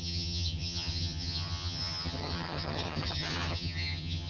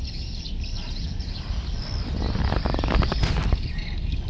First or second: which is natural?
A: second